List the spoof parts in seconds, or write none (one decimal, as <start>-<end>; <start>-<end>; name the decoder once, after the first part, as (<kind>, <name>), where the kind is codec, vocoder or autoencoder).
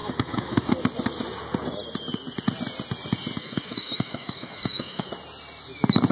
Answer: 0.0-0.6 (autoencoder, DAC-VAE); 3.4-5.1